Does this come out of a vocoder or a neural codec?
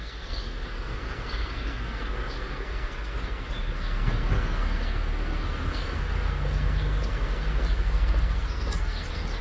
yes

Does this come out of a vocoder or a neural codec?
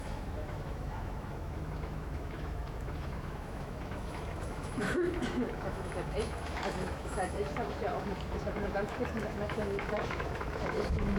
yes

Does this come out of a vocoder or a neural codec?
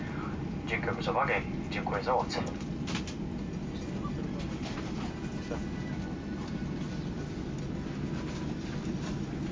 no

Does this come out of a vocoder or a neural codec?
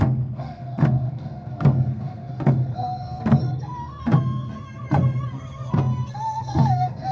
yes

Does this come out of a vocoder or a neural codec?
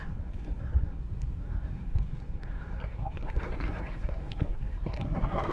yes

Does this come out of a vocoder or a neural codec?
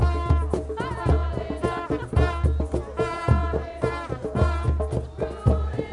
no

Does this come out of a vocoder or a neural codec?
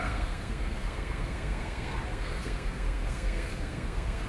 yes